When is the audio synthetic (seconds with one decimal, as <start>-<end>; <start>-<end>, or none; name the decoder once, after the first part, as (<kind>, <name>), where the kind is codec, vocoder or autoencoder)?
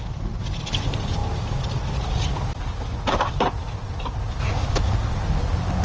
none